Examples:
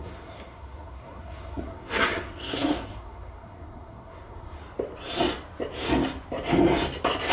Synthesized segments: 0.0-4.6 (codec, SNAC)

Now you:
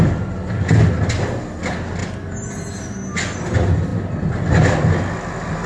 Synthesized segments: none

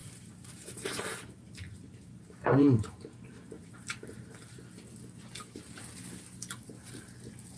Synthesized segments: 0.0-4.6 (vocoder, BigVGAN v2)

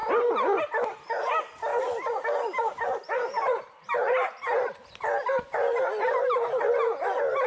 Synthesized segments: none

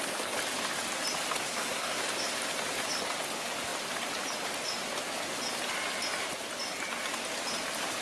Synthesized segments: 1.4-2.0 (codec, SNAC)